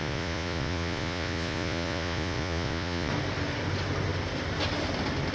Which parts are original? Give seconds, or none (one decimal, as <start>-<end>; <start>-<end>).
3.1-5.3